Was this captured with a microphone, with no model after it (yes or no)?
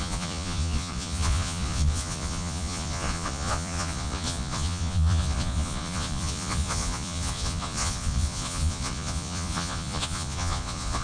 no